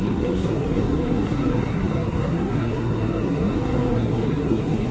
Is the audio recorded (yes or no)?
no